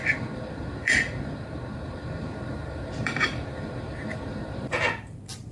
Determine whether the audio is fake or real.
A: fake